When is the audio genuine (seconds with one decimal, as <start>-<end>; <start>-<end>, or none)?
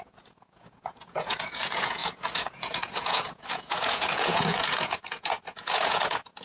none